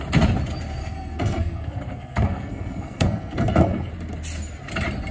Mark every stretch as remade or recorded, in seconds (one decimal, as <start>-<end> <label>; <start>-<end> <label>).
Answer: 0.0-0.8 recorded; 0.8-3.9 remade; 3.9-5.1 recorded

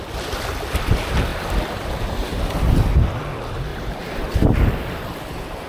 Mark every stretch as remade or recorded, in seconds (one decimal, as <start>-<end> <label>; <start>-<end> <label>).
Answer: 0.0-1.3 recorded; 1.3-2.4 remade; 2.4-3.7 recorded; 3.7-4.7 remade; 4.7-5.7 recorded

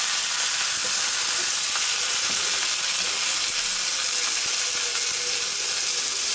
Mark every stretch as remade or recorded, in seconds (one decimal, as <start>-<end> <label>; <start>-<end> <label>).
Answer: 0.0-6.3 recorded